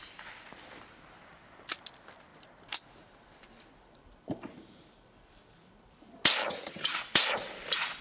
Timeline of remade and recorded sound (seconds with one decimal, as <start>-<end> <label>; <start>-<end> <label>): 0.0-6.4 recorded; 6.4-7.0 remade; 7.0-8.0 recorded